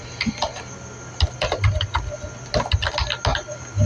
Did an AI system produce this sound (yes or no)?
no